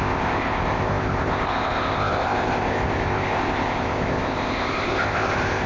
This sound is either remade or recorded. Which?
remade